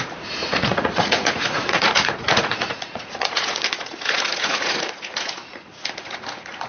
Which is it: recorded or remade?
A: remade